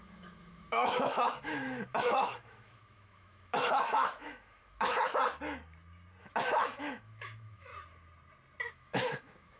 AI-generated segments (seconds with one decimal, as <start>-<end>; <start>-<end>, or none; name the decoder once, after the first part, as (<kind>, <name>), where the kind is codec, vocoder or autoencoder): 0.0-5.2 (autoencoder, DAC-VAE); 6.2-7.7; 8.7-9.6